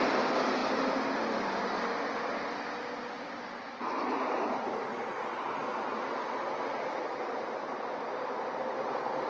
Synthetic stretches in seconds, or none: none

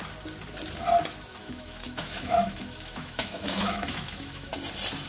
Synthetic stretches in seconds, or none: 1.4-4.5 (autoencoder, DAC-VAE)